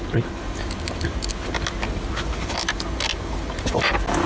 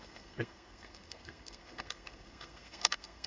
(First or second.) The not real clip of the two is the second